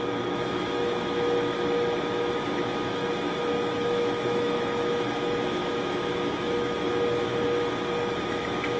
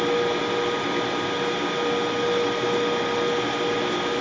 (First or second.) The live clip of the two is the second